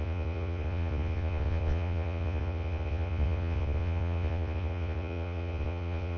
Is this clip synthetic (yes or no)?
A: yes